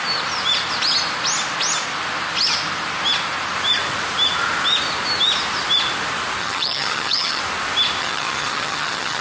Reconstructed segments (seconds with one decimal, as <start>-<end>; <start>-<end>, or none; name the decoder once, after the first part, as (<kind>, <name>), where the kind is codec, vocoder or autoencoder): 6.4-7.4 (vocoder, HiFi-GAN); 8.0-9.2